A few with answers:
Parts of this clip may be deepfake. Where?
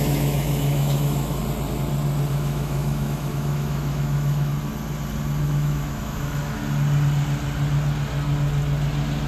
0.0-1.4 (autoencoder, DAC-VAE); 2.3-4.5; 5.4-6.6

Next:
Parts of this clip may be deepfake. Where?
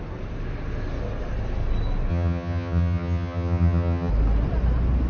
2.1-4.1 (vocoder, HiFi-GAN)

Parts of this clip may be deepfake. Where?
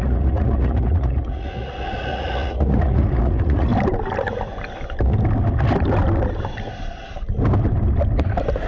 0.0-3.7 (vocoder, Vocos)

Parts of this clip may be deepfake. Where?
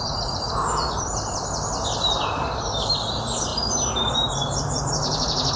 0.0-5.6 (vocoder, BigVGAN v2)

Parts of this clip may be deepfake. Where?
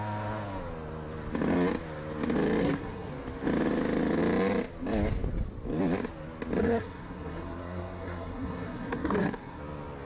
2.6-3.1 (codec, SNAC); 6.6-9.6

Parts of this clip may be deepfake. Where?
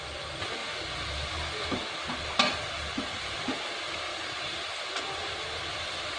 4.1-4.9 (vocoder, BigVGAN v2)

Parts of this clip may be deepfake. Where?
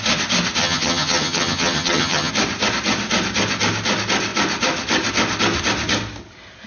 0.6-2.3 (vocoder, HiFi-GAN)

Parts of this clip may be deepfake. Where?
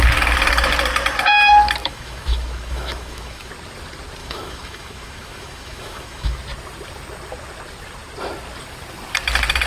1.8-3.5 (autoencoder, DAC-VAE); 4.2-6.4